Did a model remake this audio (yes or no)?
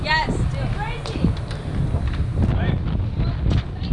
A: no